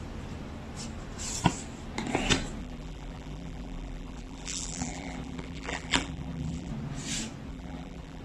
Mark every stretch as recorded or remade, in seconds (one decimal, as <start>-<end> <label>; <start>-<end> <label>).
0.0-2.6 recorded; 2.6-6.7 remade; 6.7-7.5 recorded; 7.5-8.2 remade

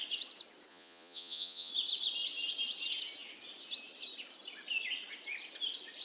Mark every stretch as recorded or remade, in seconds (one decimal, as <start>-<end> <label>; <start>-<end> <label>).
0.0-0.7 recorded; 0.7-1.7 remade; 1.7-6.0 recorded

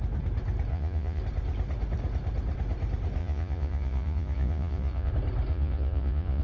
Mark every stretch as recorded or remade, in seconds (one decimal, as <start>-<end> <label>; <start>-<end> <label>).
0.0-0.7 recorded; 0.7-1.2 remade; 1.2-3.2 recorded; 3.2-5.1 remade; 5.1-5.5 recorded; 5.5-6.4 remade

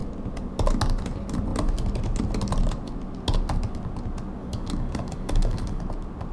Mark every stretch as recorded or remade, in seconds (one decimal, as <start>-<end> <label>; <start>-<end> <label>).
0.0-4.4 recorded; 4.4-5.8 remade; 5.8-6.3 recorded

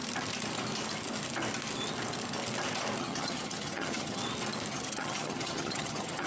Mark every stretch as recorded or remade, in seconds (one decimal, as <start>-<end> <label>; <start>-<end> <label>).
0.0-3.0 recorded; 3.0-4.2 remade; 4.2-4.7 recorded; 4.7-6.3 remade

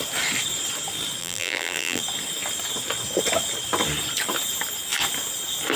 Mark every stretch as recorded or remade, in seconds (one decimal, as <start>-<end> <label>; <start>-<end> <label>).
0.0-1.2 recorded; 1.2-2.0 remade; 2.0-5.8 recorded

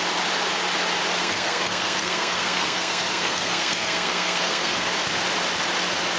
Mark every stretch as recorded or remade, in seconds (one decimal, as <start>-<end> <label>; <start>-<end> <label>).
0.0-1.2 recorded; 1.2-4.9 remade; 4.9-6.2 recorded

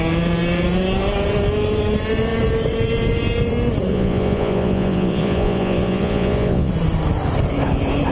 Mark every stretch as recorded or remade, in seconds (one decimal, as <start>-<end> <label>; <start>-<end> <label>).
0.0-3.9 recorded; 3.9-6.7 remade; 6.7-8.1 recorded